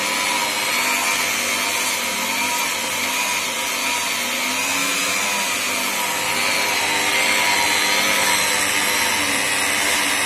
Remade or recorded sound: recorded